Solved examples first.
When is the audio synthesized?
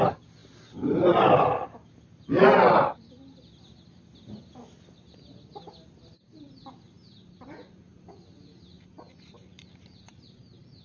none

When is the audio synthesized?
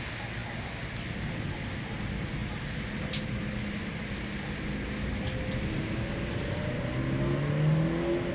none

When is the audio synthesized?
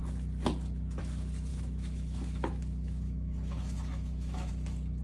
1.5-4.5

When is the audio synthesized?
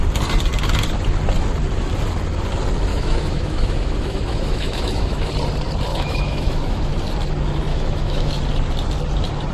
2.9-5.3; 5.9-6.9; 7.7-8.4